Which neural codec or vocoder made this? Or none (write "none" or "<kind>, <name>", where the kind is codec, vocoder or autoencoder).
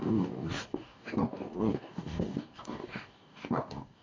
codec, DAC